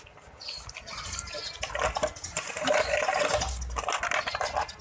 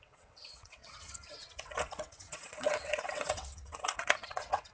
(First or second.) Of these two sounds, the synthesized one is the second